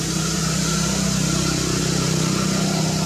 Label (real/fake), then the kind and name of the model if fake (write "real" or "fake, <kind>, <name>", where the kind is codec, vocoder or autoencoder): real